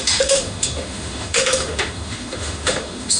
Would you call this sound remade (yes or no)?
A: yes